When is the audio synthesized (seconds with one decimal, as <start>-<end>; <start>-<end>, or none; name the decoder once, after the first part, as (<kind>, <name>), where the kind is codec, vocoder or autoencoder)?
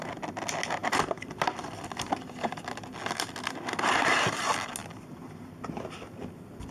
0.8-3.0 (vocoder, BigVGAN v2); 4.8-5.7